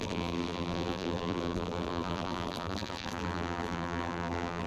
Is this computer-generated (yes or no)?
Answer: yes